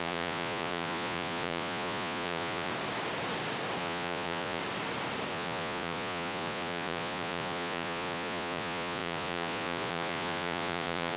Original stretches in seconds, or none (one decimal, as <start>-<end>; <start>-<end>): 2.7-3.8; 4.6-5.3